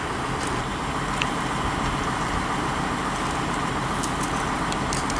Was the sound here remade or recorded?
remade